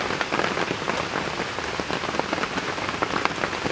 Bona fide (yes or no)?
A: yes